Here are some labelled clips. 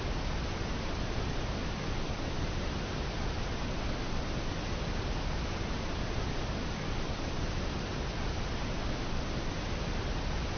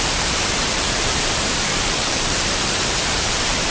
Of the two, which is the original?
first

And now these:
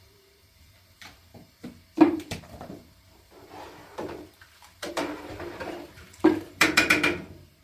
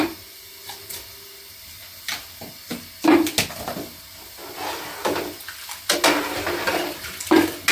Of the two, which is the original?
second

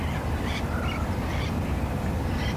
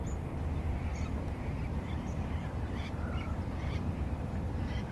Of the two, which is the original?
first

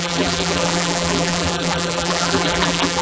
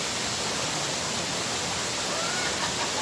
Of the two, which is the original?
second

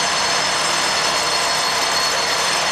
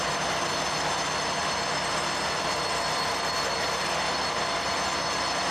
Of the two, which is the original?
second